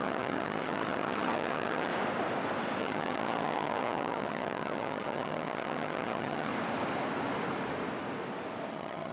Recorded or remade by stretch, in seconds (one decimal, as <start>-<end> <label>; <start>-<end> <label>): 0.0-1.9 remade; 1.9-2.8 recorded; 2.8-6.5 remade; 6.5-8.7 recorded; 8.7-9.1 remade